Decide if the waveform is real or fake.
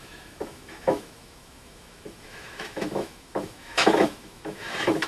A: fake